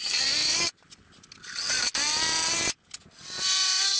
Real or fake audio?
real